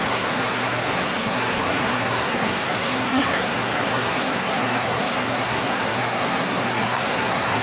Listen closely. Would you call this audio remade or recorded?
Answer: remade